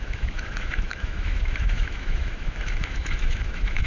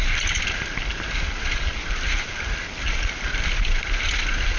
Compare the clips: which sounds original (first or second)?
second